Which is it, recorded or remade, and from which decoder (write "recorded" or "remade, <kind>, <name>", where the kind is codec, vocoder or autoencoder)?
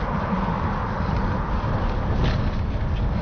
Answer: recorded